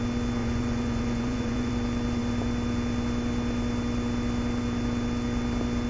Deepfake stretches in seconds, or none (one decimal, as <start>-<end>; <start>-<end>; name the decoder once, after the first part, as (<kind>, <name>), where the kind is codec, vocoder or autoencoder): 0.4-1.7 (vocoder, Vocos)